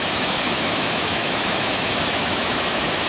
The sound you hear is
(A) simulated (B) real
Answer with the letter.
A